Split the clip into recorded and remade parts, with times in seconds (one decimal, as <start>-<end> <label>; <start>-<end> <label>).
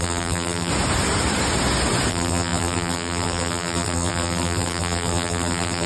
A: 0.0-0.7 remade; 0.7-2.1 recorded; 2.1-5.9 remade